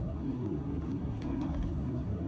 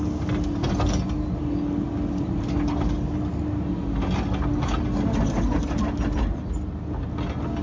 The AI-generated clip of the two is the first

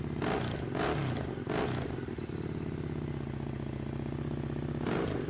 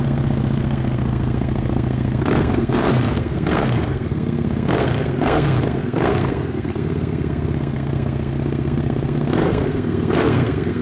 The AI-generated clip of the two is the second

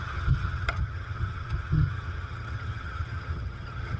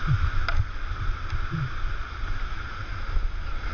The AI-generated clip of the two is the first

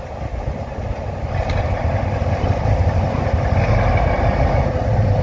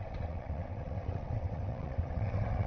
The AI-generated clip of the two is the second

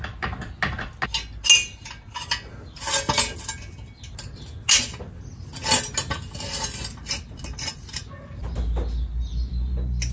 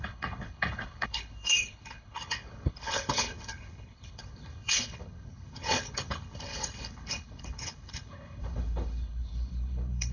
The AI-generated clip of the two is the second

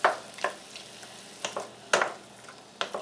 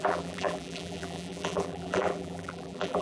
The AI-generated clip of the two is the second